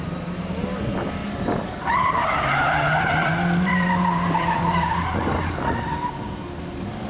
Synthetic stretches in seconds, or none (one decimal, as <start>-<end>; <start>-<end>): 1.2-5.5